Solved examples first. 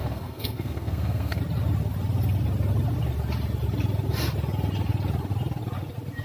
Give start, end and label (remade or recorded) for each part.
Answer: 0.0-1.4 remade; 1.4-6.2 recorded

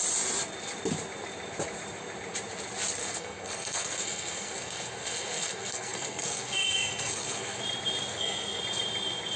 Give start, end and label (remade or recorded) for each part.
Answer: 0.0-3.0 recorded; 3.0-7.6 remade; 7.6-8.1 recorded; 8.1-8.6 remade; 8.6-9.4 recorded